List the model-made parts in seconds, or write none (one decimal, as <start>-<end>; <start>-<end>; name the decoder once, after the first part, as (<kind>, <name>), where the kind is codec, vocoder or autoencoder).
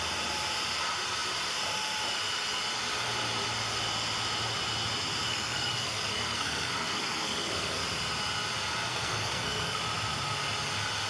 5.3-7.8 (codec, SNAC); 8.9-9.8